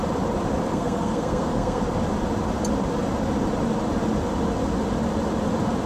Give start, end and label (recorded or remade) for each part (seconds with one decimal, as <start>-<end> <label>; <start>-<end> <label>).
0.0-0.7 recorded; 0.7-1.8 remade; 1.8-5.9 recorded

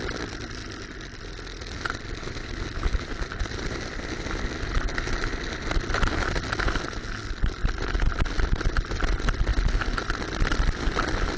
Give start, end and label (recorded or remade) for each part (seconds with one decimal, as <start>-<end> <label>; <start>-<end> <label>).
0.0-11.4 recorded

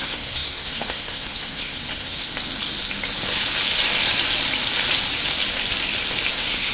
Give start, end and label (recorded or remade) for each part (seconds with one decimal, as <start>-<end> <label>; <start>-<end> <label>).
0.0-2.3 remade; 2.3-6.3 recorded; 6.3-6.7 remade

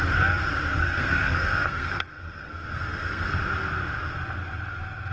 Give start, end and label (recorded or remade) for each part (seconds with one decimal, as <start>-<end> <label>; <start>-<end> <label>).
0.0-0.8 recorded; 0.8-3.4 remade; 3.4-5.1 recorded

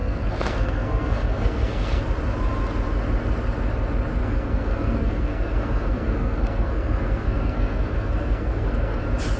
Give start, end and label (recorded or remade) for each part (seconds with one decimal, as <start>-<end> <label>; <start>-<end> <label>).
0.0-2.0 remade; 2.0-4.2 recorded; 4.2-9.0 remade; 9.0-9.4 recorded

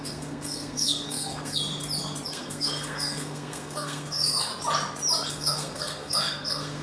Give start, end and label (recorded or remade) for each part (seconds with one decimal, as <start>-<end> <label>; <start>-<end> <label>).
0.0-1.6 remade; 1.6-2.3 recorded; 2.3-4.5 remade; 4.5-5.3 recorded; 5.3-6.8 remade

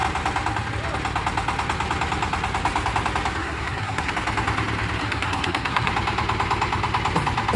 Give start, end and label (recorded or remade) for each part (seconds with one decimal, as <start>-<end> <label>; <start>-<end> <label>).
0.0-3.4 recorded; 3.4-4.1 remade; 4.1-5.0 recorded; 5.0-5.9 remade; 5.9-7.6 recorded